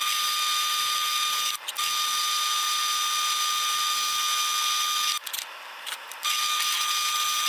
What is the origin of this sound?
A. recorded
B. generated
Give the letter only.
A